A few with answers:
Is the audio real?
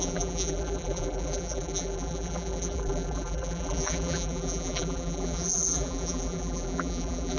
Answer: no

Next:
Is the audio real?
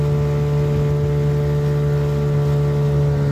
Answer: yes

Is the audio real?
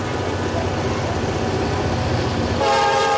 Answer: yes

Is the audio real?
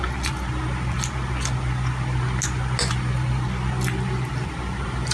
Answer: yes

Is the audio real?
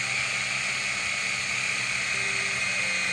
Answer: yes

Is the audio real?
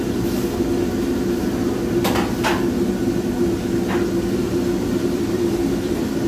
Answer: yes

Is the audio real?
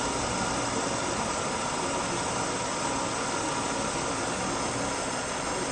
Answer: yes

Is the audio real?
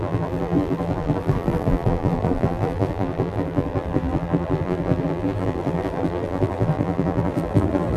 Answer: no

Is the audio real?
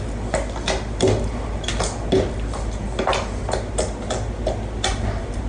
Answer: yes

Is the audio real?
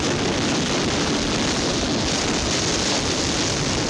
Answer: yes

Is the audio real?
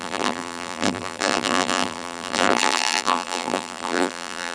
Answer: no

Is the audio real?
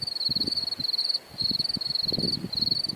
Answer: yes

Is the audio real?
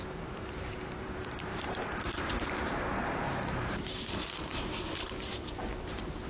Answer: no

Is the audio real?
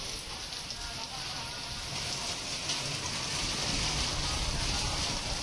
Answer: yes